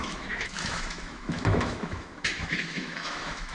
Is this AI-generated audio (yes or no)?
yes